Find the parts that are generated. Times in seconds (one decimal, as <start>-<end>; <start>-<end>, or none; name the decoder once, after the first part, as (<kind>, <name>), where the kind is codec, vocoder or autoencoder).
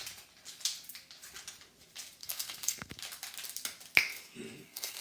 2.2-2.9 (codec, SNAC); 4.1-5.0